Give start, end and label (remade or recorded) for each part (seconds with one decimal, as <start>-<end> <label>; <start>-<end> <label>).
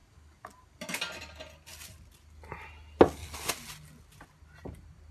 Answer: 0.0-5.1 recorded